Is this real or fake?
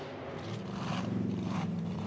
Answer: fake